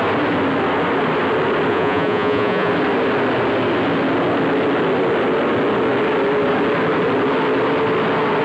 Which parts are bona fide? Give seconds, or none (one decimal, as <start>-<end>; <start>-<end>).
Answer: 0.0-1.7; 2.7-8.4